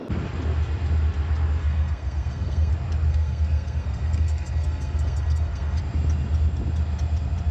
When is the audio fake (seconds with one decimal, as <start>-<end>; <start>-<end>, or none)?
1.6-2.7; 3.1-5.8